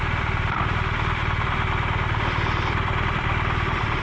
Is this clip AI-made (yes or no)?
yes